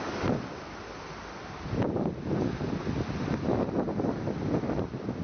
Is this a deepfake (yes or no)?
no